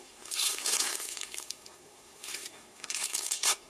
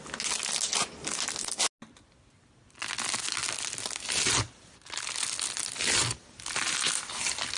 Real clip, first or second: second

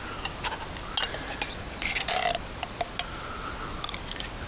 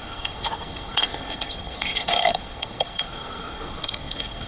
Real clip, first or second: first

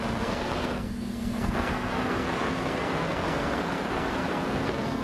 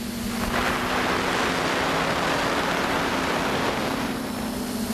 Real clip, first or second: second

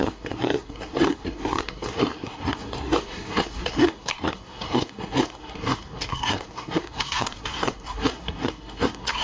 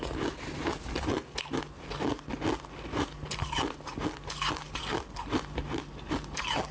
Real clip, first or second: second